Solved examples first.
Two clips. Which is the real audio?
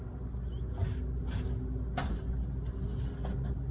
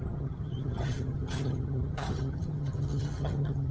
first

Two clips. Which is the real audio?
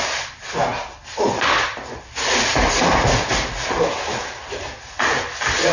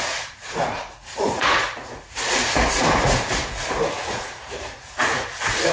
first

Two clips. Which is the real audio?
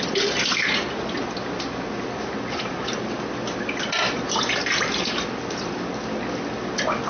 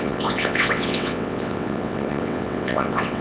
first